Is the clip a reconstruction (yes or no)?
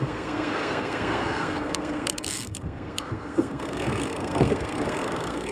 yes